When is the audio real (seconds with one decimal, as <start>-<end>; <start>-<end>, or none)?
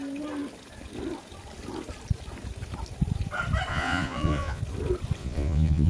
0.0-3.7; 4.6-5.2